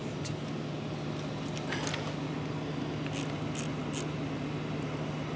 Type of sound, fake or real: real